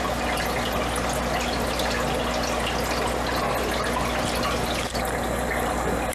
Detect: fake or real real